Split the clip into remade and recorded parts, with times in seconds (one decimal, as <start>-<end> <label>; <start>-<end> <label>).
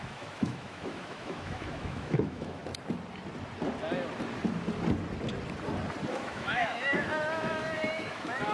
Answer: 0.0-2.6 remade; 2.6-6.1 recorded; 6.1-8.5 remade